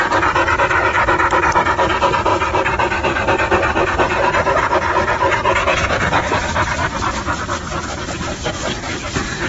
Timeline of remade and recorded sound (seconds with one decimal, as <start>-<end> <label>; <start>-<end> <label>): 0.0-9.5 recorded